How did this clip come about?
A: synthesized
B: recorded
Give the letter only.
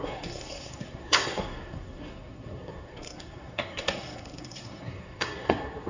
A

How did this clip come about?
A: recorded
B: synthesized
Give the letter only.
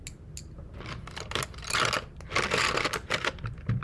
A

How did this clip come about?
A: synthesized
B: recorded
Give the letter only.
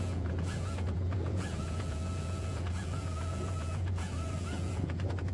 A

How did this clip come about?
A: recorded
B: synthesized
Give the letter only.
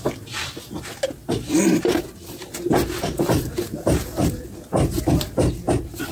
A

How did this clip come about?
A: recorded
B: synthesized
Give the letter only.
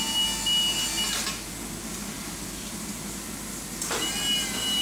A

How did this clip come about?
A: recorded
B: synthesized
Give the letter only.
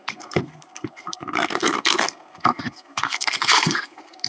B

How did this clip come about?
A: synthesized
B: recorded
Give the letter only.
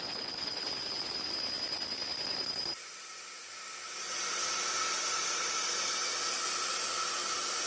B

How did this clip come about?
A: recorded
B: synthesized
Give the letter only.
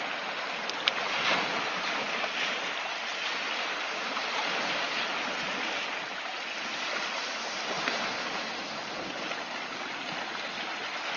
A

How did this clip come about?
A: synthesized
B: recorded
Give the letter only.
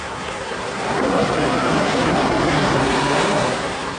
A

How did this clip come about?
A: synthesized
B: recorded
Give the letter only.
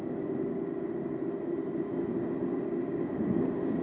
B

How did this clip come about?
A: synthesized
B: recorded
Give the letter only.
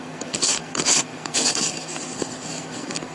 A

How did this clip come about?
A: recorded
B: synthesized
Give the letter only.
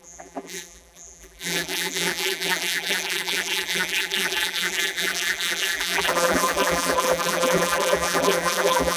B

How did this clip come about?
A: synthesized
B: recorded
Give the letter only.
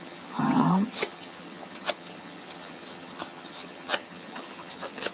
A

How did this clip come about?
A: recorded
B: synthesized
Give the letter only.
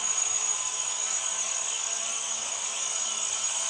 B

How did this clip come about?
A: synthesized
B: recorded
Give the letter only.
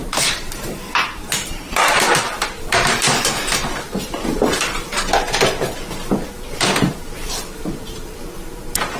A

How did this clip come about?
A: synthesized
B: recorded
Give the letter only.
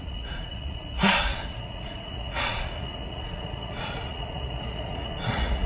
A